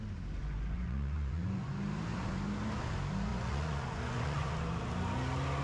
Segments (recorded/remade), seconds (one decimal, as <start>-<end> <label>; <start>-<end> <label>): 0.0-0.4 recorded; 0.4-1.7 remade; 1.7-3.3 recorded; 3.3-4.5 remade; 4.5-5.6 recorded